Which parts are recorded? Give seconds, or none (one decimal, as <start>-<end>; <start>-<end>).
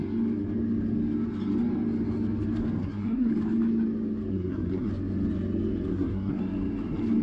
0.0-2.8; 3.3-4.3; 4.9-5.9; 6.4-7.2